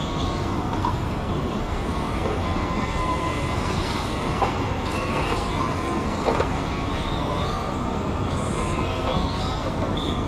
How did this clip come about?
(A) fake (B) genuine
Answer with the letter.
A